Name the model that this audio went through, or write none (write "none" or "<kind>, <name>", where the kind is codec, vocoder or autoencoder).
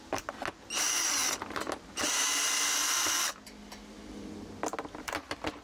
none